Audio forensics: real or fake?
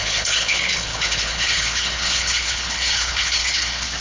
fake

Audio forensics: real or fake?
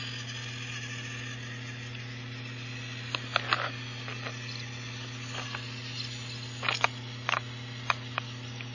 real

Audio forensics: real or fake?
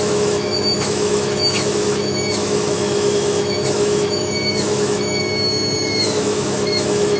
fake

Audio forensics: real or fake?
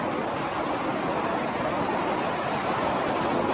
real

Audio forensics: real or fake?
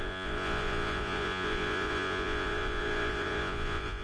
fake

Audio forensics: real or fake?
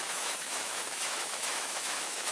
fake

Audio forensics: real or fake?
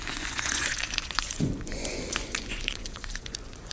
fake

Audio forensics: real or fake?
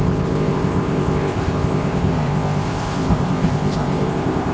fake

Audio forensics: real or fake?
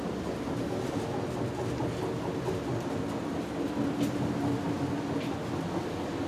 real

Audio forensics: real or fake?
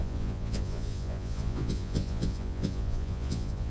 fake